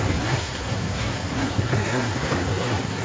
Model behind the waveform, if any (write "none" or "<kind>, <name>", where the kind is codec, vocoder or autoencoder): codec, SNAC